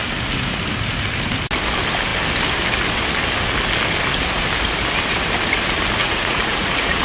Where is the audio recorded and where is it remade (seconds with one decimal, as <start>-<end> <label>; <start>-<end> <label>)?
0.0-6.0 recorded; 6.0-7.0 remade

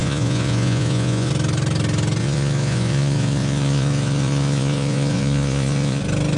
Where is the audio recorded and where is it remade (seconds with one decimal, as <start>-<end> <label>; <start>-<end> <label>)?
0.0-1.3 remade; 1.3-2.2 recorded; 2.2-6.0 remade; 6.0-6.4 recorded